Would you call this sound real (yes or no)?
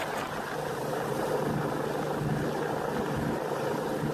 yes